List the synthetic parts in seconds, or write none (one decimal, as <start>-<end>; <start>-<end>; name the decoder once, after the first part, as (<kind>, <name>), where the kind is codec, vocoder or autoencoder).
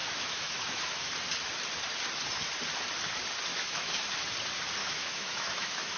0.0-1.1 (autoencoder, DAC-VAE); 3.5-4.1; 4.8-6.0